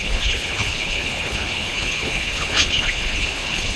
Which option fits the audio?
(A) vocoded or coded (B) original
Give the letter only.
A